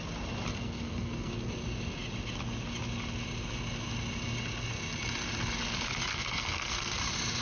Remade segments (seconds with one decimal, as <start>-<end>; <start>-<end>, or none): 0.5-1.3; 6.1-7.0